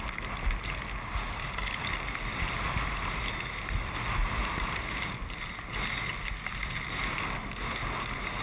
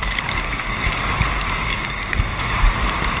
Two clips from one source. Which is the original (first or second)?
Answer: first